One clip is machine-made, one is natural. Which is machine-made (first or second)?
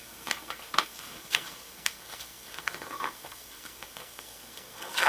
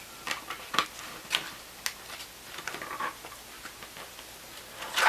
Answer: first